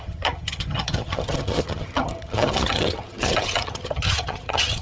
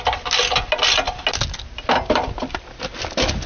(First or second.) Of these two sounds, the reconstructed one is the first